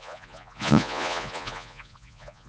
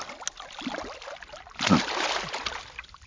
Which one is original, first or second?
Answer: second